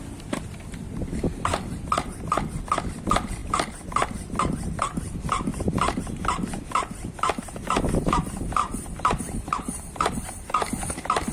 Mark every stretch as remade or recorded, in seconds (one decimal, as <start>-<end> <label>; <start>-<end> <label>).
0.0-5.5 recorded; 5.5-6.0 remade; 6.0-8.6 recorded; 8.6-10.1 remade; 10.1-11.3 recorded